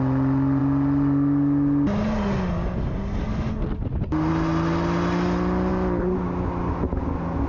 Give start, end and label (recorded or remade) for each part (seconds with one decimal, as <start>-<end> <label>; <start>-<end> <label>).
0.0-7.5 recorded